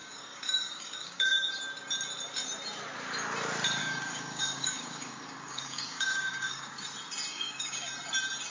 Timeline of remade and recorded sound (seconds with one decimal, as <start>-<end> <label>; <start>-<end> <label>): 0.0-1.6 remade; 1.6-3.8 recorded; 3.8-6.7 remade; 6.7-7.3 recorded; 7.3-7.9 remade; 7.9-8.5 recorded

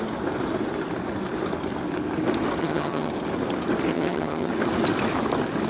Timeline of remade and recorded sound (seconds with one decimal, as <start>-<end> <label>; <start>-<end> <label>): 0.0-2.6 recorded; 2.6-3.1 remade; 3.1-3.9 recorded; 3.9-4.5 remade; 4.5-5.7 recorded

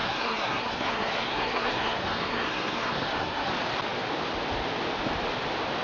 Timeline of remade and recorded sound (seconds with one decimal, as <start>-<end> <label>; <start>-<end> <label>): 0.0-3.5 remade; 3.5-5.8 recorded

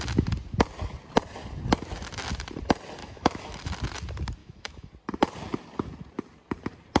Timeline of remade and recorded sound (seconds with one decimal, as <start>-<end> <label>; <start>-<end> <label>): 0.0-3.0 recorded; 3.0-3.7 remade; 3.7-4.4 recorded; 4.4-4.9 remade; 4.9-7.0 recorded